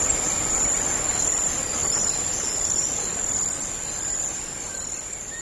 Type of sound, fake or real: real